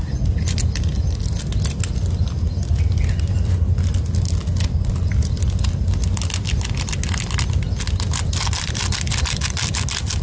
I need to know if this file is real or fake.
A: real